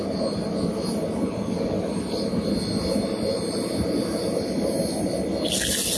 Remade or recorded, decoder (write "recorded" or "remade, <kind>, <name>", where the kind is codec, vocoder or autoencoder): recorded